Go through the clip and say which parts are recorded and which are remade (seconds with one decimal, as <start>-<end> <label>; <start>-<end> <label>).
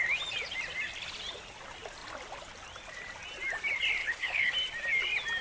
0.0-4.0 recorded; 4.0-4.5 remade; 4.5-5.4 recorded